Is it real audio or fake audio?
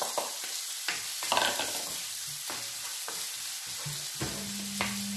real